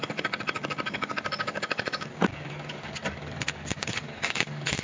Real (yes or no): no